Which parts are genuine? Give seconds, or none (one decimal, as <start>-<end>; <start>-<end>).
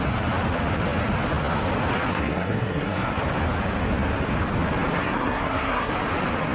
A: 0.0-2.1; 3.2-5.0; 5.9-6.5